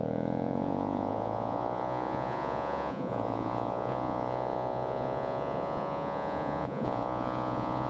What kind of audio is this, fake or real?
fake